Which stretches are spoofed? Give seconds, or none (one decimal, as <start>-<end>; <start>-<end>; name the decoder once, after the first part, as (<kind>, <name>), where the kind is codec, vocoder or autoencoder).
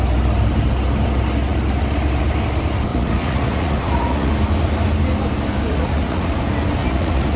2.9-4.3 (vocoder, Vocos); 5.7-6.3; 6.8-7.4